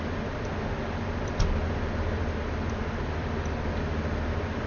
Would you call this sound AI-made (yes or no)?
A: no